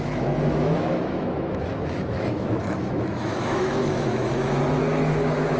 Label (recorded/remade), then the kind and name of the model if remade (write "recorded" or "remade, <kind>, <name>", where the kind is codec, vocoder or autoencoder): remade, autoencoder, DAC-VAE